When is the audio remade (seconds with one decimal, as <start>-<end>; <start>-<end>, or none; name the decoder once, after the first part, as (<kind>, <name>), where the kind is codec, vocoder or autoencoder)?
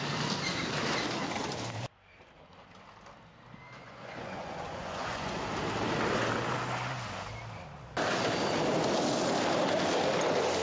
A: 3.8-5.4 (vocoder, Vocos)